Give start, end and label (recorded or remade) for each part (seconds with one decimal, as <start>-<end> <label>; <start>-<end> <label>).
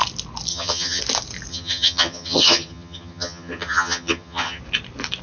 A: 0.0-0.5 recorded; 0.5-1.0 remade; 1.0-1.5 recorded; 1.5-4.6 remade; 4.6-5.2 recorded